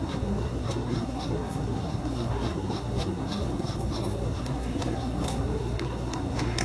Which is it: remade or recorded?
remade